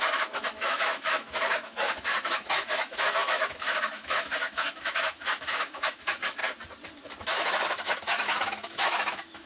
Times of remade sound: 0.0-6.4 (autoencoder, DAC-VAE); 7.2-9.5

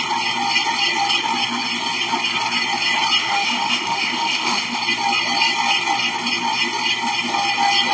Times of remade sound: 3.2-4.8 (autoencoder, DAC-VAE)

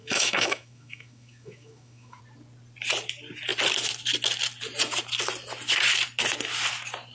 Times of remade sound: 0.0-2.2 (autoencoder, DAC-VAE)